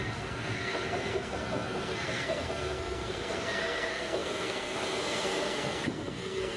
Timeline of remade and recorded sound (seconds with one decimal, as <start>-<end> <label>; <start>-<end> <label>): 0.0-6.6 remade